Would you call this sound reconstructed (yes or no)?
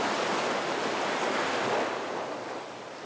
yes